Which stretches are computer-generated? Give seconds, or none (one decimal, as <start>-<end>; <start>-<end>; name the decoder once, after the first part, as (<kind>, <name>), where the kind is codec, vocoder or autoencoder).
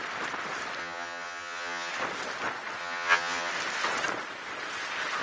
0.8-1.9 (vocoder, HiFi-GAN); 2.8-3.5